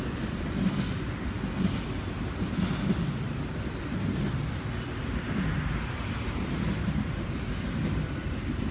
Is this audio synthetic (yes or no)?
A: no